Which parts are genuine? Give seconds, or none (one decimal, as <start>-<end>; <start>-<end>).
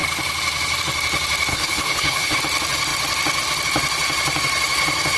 0.0-1.5; 2.4-5.2